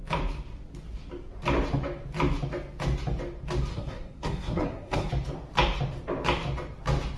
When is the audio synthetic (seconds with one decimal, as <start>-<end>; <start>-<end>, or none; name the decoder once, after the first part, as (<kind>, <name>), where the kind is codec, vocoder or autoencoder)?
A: 3.7-5.1 (codec, SNAC)